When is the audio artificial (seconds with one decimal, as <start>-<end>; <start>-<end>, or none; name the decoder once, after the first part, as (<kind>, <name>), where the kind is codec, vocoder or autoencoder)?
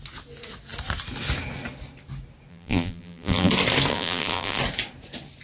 2.5-3.5 (vocoder, BigVGAN v2); 3.9-4.6